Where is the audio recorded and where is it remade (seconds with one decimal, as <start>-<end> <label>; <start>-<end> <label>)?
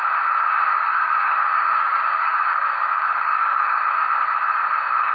0.0-0.7 recorded; 0.7-3.8 remade; 3.8-5.1 recorded